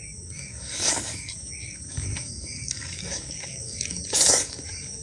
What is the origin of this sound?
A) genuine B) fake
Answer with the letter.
B